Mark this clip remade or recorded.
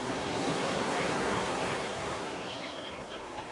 remade